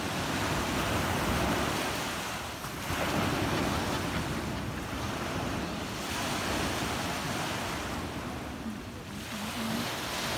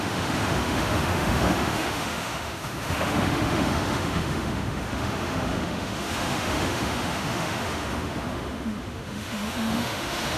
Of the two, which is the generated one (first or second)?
second